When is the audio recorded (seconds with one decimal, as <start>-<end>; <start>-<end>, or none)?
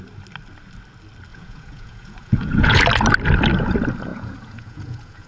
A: 0.0-1.3; 2.8-4.1